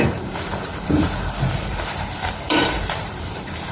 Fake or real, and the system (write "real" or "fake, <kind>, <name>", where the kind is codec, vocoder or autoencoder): fake, vocoder, BigVGAN v2